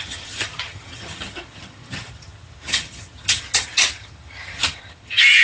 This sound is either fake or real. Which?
fake